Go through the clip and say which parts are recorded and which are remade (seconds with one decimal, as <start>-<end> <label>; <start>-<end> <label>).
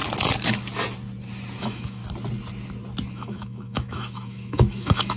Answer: 0.0-1.6 recorded; 1.6-2.0 remade; 2.0-3.1 recorded; 3.1-5.2 remade